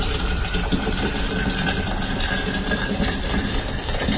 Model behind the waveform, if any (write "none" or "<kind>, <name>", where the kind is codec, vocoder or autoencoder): vocoder, BigVGAN v2